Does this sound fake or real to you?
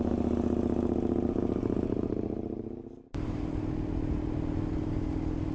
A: real